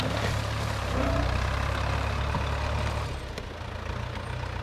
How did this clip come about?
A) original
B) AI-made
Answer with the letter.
A